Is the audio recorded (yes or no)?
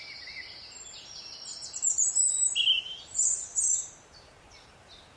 yes